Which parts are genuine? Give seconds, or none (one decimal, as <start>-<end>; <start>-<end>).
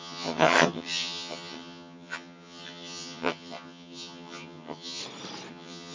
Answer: 5.0-5.5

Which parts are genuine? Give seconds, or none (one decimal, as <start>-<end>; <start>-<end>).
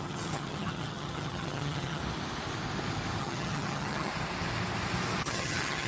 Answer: 2.0-3.2; 4.1-5.2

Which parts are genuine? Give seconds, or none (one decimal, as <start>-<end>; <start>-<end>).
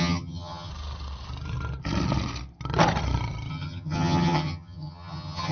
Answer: 0.7-3.5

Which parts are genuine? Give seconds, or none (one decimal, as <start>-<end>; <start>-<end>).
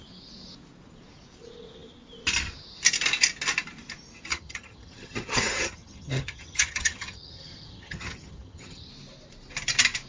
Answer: 0.0-4.3; 8.9-10.1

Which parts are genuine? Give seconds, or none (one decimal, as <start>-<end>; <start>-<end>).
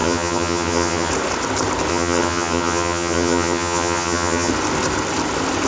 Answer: 1.1-1.9; 4.5-5.7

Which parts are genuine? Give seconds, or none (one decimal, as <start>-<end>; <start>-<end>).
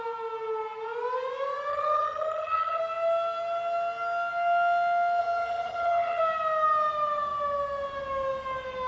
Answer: 0.0-1.7; 2.8-5.2; 6.2-8.9